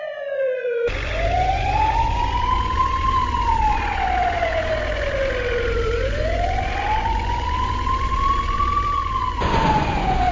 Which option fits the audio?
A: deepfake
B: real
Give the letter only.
A